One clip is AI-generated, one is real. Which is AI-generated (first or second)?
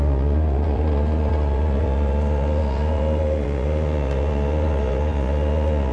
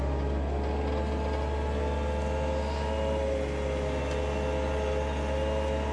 first